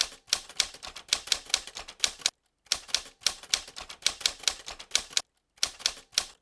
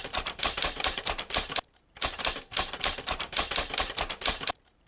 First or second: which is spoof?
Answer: second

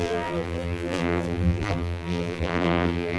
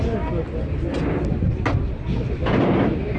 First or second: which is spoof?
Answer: first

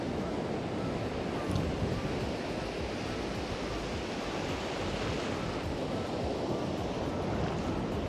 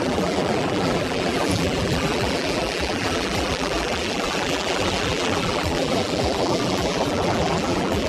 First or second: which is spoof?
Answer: second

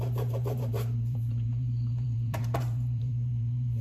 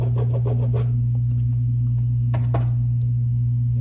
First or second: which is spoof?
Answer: first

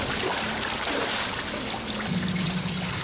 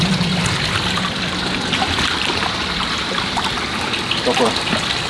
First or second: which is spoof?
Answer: second